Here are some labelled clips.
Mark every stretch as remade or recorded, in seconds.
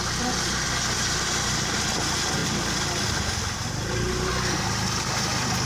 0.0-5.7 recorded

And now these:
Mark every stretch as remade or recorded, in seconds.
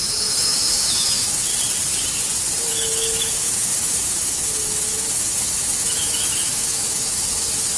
0.0-1.5 remade; 1.5-2.7 recorded; 2.7-7.8 remade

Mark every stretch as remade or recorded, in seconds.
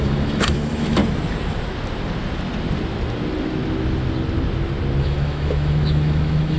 0.0-1.0 remade; 1.0-5.0 recorded; 5.0-6.6 remade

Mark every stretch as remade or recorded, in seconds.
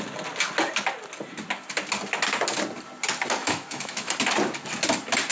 0.0-3.4 recorded; 3.4-4.1 remade; 4.1-5.3 recorded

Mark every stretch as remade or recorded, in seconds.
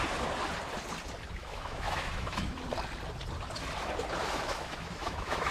0.0-1.4 recorded; 1.4-2.6 remade; 2.6-4.2 recorded; 4.2-5.5 remade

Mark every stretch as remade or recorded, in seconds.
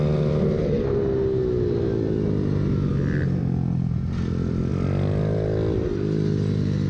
0.0-6.9 recorded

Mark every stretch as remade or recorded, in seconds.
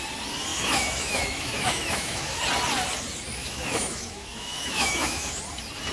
0.0-0.5 recorded; 0.5-2.4 remade; 2.4-3.4 recorded; 3.4-5.4 remade; 5.4-5.9 recorded